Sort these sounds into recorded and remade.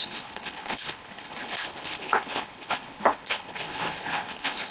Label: remade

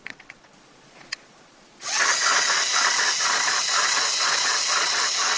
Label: remade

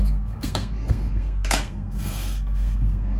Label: remade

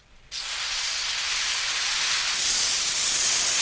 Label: recorded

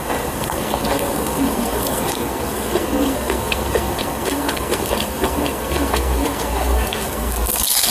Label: remade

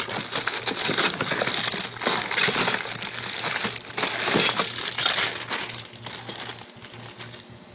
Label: recorded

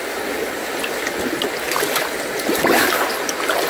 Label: recorded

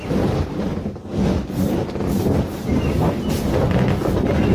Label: recorded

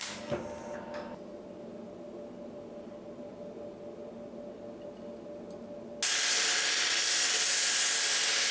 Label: recorded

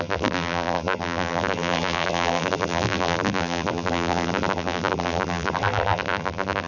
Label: remade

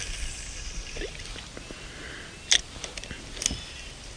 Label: recorded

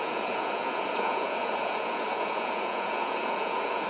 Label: remade